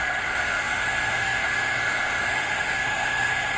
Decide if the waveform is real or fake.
fake